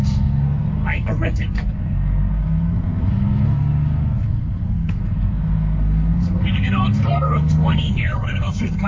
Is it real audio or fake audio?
fake